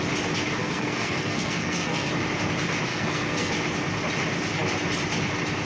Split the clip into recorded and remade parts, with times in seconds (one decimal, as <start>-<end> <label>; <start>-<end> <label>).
0.0-0.6 recorded; 0.6-2.1 remade; 2.1-2.9 recorded; 2.9-3.5 remade; 3.5-5.7 recorded